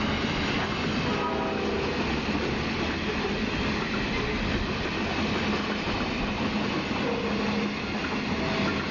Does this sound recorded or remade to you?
recorded